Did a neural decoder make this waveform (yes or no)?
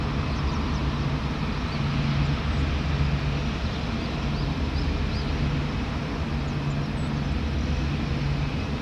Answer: no